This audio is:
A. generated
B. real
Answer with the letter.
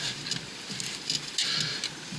B